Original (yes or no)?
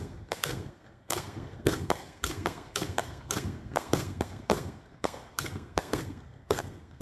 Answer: no